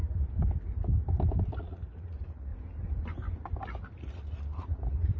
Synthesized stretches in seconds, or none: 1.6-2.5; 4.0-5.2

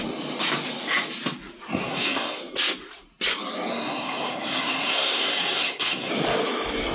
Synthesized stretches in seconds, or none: 1.8-2.4; 3.7-6.1

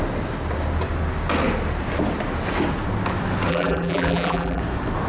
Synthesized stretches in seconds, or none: 3.5-4.6

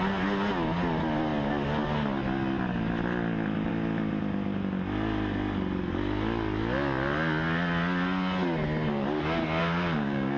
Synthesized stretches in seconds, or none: 9.6-10.4

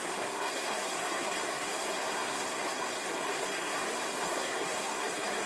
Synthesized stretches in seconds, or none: 0.0-5.5

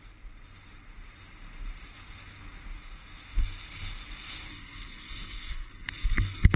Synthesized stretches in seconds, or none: 4.5-6.6